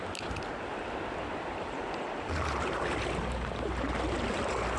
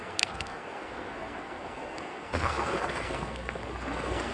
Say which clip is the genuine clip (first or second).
first